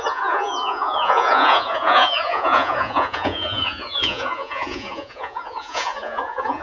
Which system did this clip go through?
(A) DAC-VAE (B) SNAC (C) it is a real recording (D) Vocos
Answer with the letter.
D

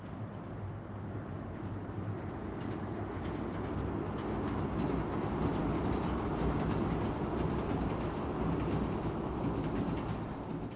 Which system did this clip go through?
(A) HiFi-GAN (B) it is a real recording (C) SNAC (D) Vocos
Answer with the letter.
B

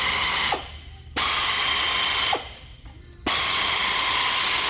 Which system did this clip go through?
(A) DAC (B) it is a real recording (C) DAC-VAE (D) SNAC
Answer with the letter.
B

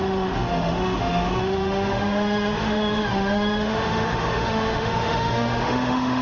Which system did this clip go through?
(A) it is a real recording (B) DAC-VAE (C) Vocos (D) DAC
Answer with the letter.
B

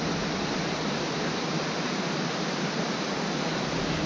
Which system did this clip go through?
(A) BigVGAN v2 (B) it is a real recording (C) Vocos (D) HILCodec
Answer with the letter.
B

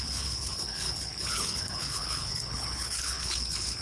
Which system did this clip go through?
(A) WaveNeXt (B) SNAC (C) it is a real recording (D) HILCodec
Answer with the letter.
D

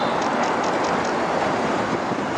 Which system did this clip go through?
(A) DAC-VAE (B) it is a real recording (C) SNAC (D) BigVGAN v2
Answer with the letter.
B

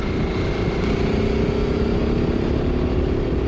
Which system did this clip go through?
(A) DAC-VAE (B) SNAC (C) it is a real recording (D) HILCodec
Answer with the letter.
C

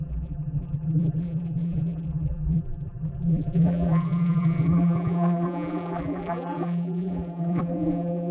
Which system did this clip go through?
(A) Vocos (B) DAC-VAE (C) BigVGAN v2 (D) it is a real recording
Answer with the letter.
C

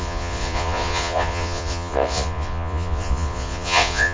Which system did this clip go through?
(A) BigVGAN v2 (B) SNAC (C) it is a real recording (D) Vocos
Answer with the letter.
D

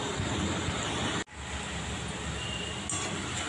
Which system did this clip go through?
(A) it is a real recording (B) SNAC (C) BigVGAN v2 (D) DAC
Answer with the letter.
A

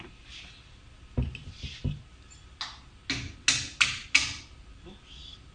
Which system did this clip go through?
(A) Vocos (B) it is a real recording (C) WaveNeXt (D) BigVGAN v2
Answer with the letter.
B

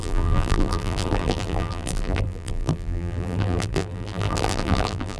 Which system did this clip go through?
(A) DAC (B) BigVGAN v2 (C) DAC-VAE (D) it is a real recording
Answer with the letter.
B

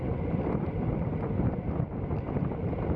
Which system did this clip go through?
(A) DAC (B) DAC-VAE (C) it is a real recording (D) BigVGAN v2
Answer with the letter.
C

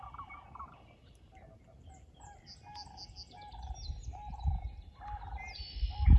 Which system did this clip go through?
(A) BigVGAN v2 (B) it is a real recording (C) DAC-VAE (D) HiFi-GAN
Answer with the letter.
B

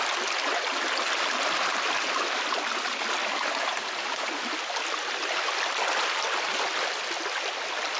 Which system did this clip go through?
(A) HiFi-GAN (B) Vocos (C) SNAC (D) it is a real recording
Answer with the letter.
D